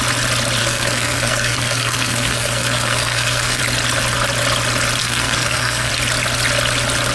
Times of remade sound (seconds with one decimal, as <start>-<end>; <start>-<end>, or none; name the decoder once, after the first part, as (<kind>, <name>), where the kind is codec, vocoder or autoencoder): 0.6-3.6 (codec, SNAC); 5.0-5.9